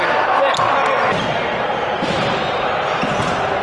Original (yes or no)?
yes